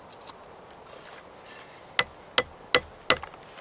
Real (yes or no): yes